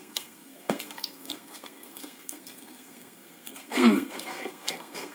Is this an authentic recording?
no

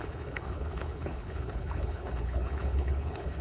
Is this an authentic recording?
no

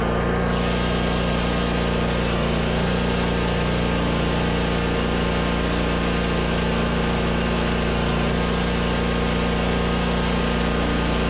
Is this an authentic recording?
yes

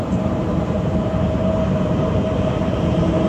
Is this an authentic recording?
no